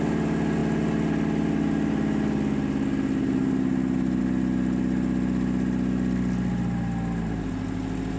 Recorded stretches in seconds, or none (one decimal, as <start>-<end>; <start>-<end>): 0.0-8.2